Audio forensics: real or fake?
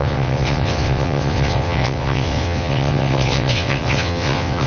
fake